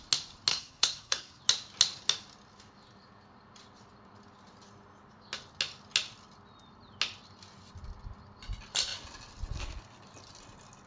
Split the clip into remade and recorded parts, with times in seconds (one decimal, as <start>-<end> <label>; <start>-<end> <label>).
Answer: 0.0-0.5 recorded; 0.5-1.4 remade; 1.4-10.9 recorded